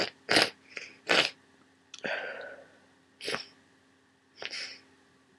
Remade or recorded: recorded